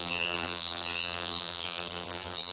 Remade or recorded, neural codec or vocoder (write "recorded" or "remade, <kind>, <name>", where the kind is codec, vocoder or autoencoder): remade, vocoder, BigVGAN v2